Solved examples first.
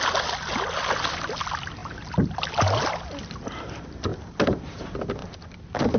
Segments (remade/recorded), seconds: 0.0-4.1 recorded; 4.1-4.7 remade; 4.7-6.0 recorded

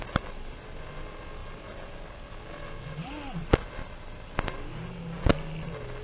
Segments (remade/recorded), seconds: 0.0-6.0 recorded

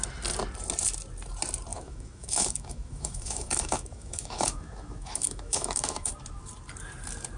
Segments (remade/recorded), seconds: 0.0-1.7 recorded; 1.7-6.1 remade; 6.1-7.4 recorded